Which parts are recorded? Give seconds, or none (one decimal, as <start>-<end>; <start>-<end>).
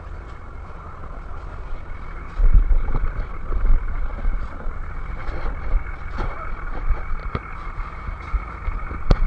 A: 0.0-9.3